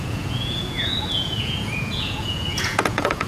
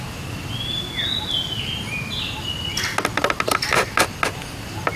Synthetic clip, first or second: first